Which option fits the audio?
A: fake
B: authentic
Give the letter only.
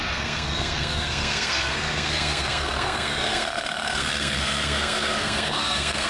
A